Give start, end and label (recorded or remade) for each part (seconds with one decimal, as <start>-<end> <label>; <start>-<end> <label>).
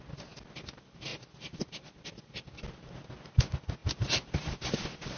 0.0-5.2 recorded